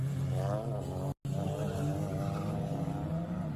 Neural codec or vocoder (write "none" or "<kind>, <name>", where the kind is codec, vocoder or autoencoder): none